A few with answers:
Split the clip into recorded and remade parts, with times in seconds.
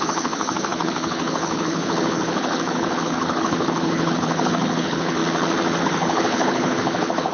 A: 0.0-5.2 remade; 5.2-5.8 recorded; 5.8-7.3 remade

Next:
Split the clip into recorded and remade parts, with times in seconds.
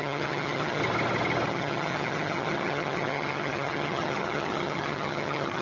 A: 0.0-0.8 remade; 0.8-1.5 recorded; 1.5-5.6 remade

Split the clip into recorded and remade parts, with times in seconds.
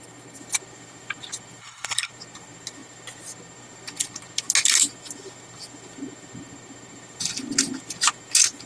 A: 0.0-1.6 recorded; 1.6-2.1 remade; 2.1-8.7 recorded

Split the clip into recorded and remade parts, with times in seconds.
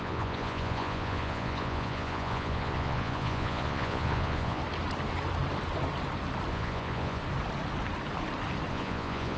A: 0.0-4.6 remade; 4.6-6.5 recorded; 6.5-7.2 remade; 7.2-8.7 recorded; 8.7-9.4 remade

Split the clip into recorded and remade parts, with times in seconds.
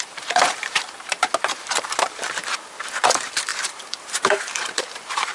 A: 0.0-5.3 remade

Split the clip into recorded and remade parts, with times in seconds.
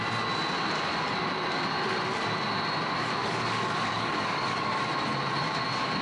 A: 0.0-3.2 recorded; 3.2-4.8 remade; 4.8-6.0 recorded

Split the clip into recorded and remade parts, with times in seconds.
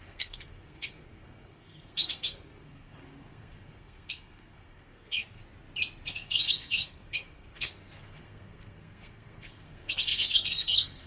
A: 0.0-5.4 remade; 5.4-6.1 recorded; 6.1-11.1 remade